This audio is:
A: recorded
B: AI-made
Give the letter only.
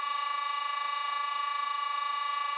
A